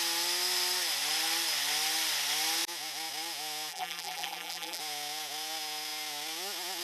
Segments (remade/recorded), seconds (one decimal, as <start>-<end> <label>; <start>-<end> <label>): 0.0-3.7 recorded; 3.7-4.8 remade; 4.8-6.8 recorded